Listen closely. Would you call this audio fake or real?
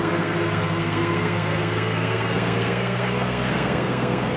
fake